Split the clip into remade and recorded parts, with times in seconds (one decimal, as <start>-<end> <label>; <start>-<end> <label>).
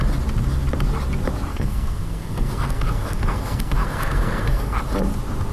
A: 0.0-1.5 recorded; 1.5-4.8 remade; 4.8-5.5 recorded